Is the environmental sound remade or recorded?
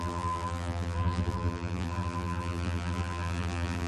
remade